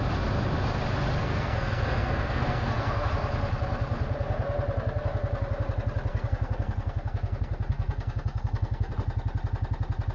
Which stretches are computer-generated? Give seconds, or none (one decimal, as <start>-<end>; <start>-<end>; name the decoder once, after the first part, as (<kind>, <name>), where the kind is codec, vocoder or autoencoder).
1.2-3.1 (codec, SNAC); 6.1-8.9